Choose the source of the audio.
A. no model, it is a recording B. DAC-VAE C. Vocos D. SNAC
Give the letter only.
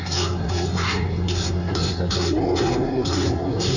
D